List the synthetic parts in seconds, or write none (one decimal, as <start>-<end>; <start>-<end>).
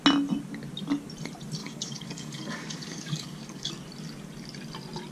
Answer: 1.6-3.7